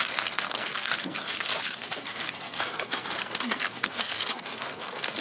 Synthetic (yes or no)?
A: yes